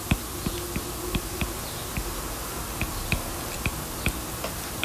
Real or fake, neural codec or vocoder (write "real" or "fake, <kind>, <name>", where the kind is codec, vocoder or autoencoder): real